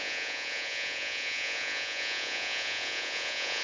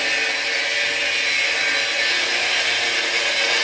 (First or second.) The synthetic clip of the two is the first